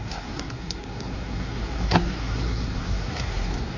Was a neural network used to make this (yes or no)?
yes